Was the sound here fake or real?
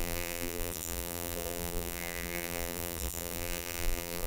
fake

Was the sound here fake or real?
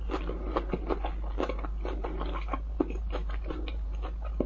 real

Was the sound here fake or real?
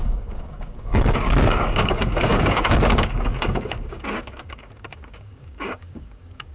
fake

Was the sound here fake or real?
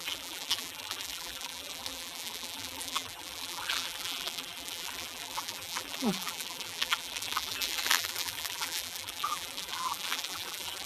fake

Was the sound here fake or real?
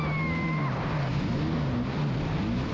real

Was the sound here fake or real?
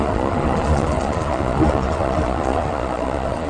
fake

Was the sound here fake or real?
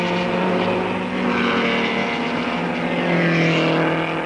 real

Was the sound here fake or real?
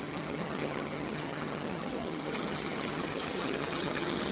fake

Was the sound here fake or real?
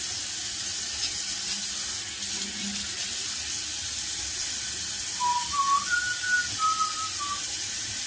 real